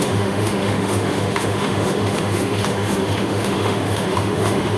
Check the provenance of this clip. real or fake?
fake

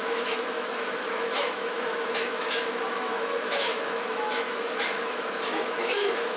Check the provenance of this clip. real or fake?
fake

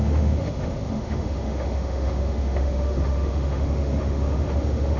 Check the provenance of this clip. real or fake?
fake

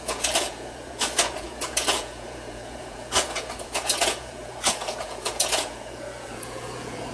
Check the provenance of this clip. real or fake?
fake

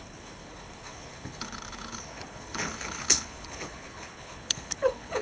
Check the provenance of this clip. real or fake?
fake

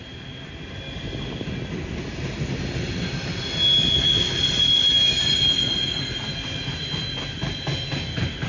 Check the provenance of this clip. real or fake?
real